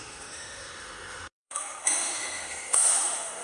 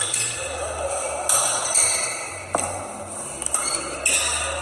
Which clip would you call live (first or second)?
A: second